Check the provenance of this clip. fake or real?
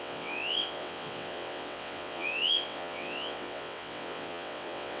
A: fake